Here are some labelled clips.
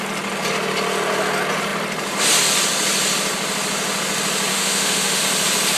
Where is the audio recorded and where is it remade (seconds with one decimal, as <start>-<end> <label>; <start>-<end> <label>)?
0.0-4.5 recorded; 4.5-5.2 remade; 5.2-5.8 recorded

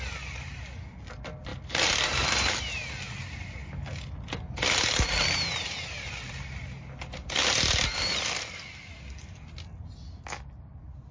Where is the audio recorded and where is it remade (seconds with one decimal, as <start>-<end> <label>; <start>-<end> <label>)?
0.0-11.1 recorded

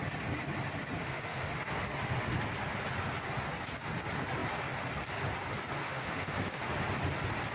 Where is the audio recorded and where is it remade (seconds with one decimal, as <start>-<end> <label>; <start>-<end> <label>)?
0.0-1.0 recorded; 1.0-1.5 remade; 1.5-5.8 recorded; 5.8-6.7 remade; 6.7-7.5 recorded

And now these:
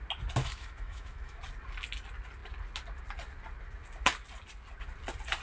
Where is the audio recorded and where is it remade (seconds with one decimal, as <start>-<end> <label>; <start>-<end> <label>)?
0.0-0.4 recorded; 0.4-1.4 remade; 1.4-5.4 recorded

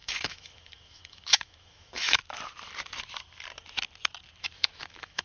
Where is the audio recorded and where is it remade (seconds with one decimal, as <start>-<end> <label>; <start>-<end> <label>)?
0.0-2.2 remade; 2.2-4.4 recorded; 4.4-5.2 remade

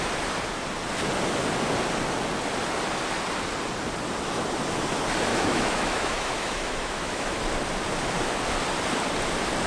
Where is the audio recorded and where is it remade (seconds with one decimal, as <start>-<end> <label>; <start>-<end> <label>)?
0.0-5.3 recorded; 5.3-7.4 remade; 7.4-9.7 recorded

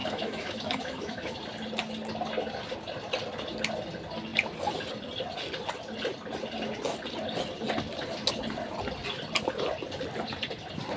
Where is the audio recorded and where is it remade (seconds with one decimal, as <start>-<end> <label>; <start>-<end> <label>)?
0.0-1.4 remade; 1.4-11.0 recorded

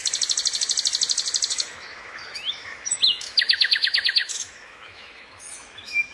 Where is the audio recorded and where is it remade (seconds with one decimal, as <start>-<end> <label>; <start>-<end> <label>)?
0.0-1.5 recorded; 1.5-6.1 remade